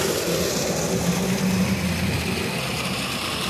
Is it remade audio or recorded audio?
recorded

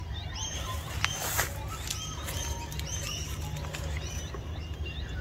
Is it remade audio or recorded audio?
recorded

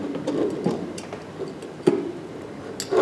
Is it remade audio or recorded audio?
recorded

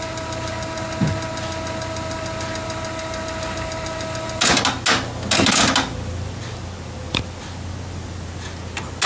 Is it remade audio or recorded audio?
recorded